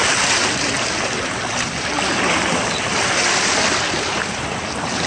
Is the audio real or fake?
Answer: real